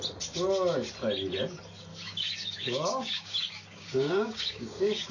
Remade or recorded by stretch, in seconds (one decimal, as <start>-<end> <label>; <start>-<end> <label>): 0.0-1.9 recorded; 1.9-5.1 remade